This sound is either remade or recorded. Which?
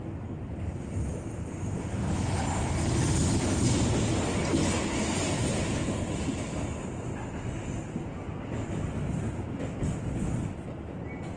recorded